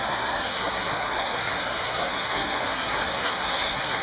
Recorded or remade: remade